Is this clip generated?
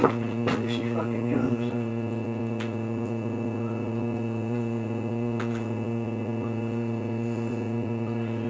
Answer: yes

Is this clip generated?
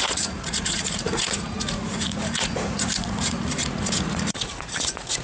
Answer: yes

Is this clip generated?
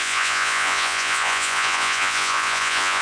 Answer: yes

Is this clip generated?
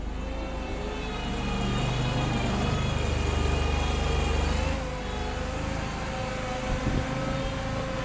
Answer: no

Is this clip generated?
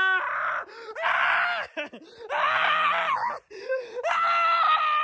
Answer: no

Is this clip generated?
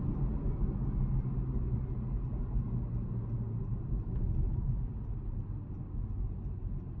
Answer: no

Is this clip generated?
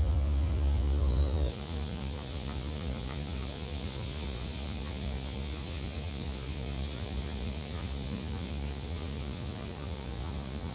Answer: yes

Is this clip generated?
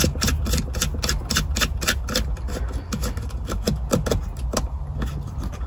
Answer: no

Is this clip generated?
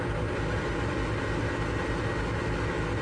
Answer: no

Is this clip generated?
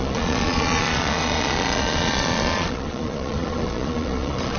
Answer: yes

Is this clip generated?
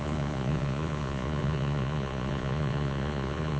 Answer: yes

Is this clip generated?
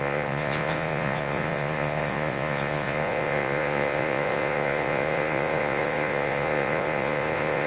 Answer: yes